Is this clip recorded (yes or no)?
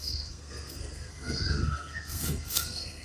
no